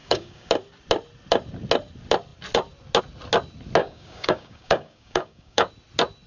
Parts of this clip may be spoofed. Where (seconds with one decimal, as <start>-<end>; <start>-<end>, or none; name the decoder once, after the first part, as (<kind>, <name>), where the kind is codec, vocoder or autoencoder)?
0.0-0.5 (codec, DAC); 3.8-5.7